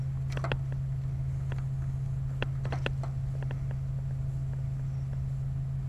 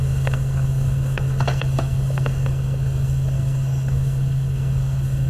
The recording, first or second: first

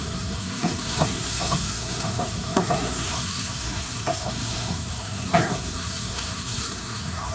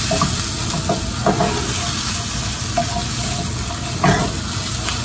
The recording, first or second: second